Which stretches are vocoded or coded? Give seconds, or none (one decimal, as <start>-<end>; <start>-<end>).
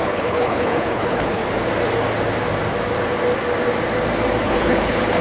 0.0-1.4; 4.4-5.2